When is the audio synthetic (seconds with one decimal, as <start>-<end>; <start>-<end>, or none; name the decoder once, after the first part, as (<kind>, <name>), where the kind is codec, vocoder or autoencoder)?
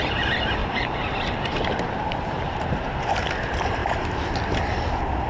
0.6-3.2 (vocoder, BigVGAN v2); 3.8-4.6